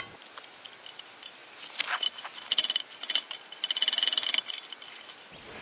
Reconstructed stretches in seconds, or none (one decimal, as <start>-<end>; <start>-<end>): none

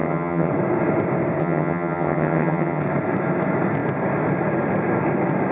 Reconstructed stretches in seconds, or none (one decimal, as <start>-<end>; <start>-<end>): 0.0-0.5; 1.4-2.8

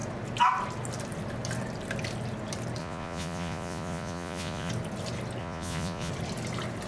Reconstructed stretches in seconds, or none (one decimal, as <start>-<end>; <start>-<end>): 2.8-4.7; 5.4-6.1

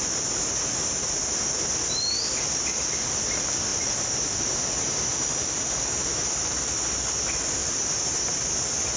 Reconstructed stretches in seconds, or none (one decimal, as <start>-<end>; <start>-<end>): 7.6-8.4

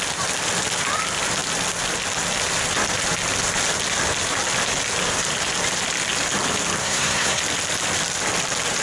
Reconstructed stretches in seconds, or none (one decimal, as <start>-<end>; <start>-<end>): 6.8-7.4

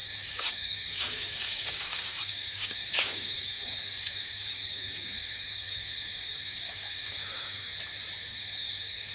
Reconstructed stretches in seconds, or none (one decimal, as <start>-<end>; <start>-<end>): 0.0-7.7; 8.3-9.1

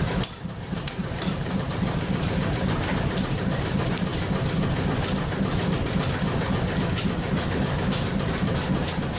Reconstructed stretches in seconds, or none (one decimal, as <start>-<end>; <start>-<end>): 0.0-4.1